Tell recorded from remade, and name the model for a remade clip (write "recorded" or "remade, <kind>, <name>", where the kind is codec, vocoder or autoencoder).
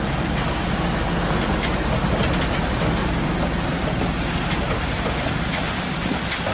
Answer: recorded